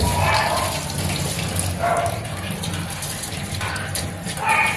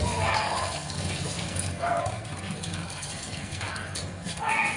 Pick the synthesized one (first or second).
second